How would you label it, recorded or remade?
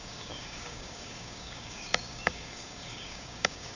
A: remade